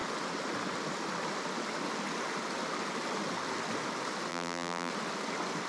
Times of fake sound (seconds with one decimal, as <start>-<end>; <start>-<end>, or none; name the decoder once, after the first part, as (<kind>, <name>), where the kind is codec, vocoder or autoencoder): 4.3-4.9 (vocoder, BigVGAN v2)